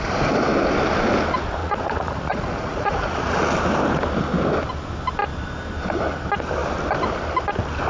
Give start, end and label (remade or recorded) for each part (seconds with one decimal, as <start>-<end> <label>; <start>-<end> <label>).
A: 0.0-1.6 recorded; 1.6-3.5 remade; 3.5-7.9 recorded